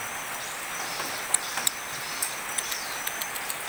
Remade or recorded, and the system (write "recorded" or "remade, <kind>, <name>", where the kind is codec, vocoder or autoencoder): recorded